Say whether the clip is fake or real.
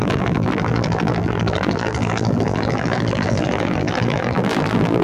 fake